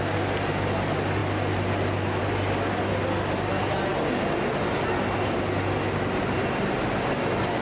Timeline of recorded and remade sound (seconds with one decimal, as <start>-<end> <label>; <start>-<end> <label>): 0.0-7.6 recorded